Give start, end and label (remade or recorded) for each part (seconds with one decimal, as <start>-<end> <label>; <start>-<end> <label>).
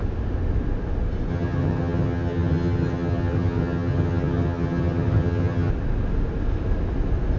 0.0-1.3 recorded; 1.3-5.7 remade; 5.7-7.4 recorded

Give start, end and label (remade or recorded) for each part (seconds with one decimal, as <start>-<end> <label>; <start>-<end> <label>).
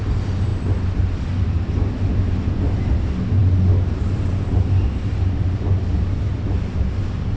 0.0-7.4 recorded